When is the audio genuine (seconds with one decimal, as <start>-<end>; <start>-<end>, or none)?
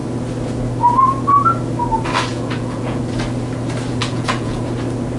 0.0-2.3; 3.0-4.0; 4.6-5.2